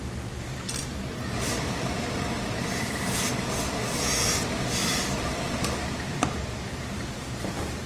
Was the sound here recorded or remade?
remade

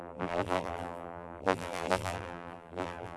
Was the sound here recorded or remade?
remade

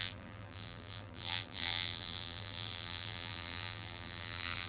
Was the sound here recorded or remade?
remade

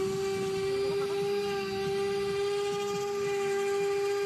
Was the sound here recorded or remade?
recorded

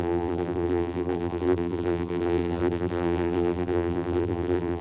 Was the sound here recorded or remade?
remade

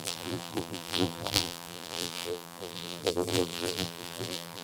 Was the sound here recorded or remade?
remade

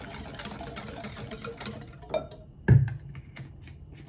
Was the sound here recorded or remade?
recorded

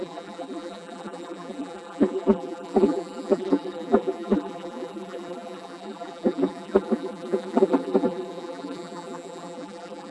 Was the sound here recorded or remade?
remade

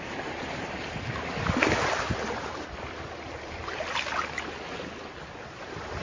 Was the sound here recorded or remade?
recorded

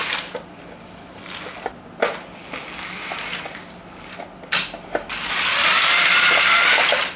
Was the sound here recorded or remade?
recorded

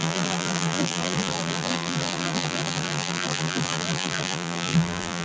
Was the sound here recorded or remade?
remade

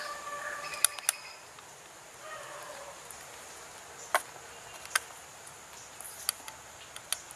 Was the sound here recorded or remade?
recorded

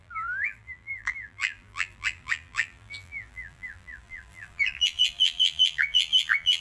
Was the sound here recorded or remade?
remade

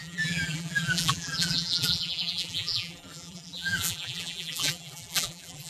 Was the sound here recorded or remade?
remade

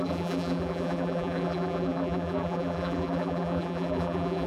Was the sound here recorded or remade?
remade